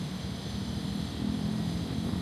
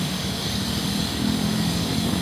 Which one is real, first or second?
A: first